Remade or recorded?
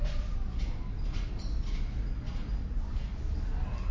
recorded